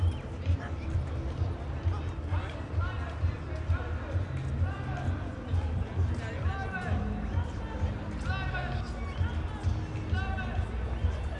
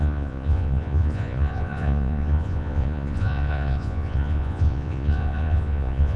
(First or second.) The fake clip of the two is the second